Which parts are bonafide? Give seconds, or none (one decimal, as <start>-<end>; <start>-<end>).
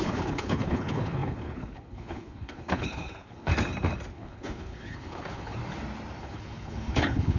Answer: 3.5-4.1; 5.6-6.2